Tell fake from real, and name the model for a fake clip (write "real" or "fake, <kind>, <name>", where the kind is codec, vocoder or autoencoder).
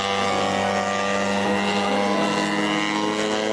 real